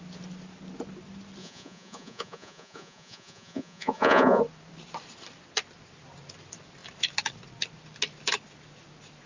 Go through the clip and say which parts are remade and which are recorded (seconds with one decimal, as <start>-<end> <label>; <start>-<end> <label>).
0.0-1.4 recorded; 1.4-4.4 remade; 4.4-9.3 recorded